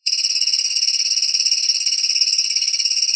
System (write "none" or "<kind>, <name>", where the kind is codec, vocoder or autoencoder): codec, SNAC